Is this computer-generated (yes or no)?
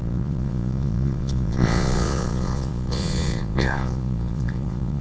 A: yes